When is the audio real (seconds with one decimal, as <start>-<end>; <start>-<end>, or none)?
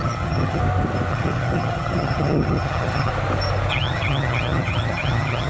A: 0.6-1.1; 3.1-3.7